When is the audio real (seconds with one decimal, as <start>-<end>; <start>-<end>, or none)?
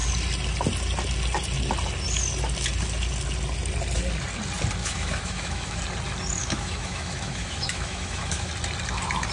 0.0-4.8; 5.8-6.4; 8.5-9.3